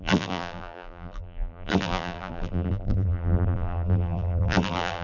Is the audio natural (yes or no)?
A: no